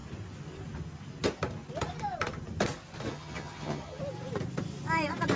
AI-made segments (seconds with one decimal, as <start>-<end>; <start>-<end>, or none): 3.1-4.0